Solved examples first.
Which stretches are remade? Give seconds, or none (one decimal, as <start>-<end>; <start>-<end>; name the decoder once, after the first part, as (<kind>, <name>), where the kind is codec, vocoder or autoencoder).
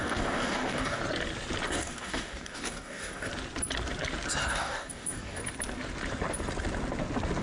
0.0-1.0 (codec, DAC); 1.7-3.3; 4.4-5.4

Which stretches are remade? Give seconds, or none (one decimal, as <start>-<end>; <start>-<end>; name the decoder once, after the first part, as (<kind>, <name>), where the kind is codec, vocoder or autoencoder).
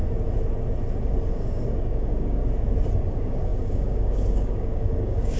1.3-2.4 (codec, DAC); 3.0-5.4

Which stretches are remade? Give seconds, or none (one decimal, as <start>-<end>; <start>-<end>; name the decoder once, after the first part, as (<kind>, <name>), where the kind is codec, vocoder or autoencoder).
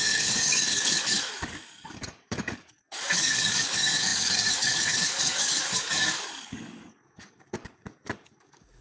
0.0-8.8 (codec, DAC)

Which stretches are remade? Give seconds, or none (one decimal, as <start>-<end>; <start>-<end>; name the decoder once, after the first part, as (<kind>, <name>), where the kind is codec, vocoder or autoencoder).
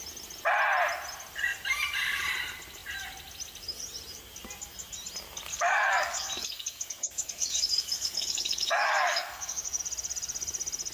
5.5-9.8 (codec, DAC)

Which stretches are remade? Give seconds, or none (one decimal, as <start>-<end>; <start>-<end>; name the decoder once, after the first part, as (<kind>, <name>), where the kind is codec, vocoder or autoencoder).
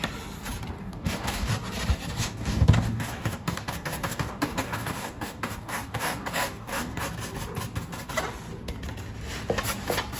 0.8-1.5 (codec, DAC); 2.2-7.0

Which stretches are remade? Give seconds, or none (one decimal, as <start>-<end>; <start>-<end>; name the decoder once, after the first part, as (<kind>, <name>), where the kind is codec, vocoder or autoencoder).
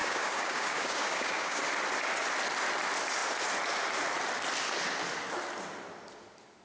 0.0-1.6 (codec, DAC)